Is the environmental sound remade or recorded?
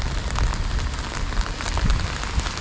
recorded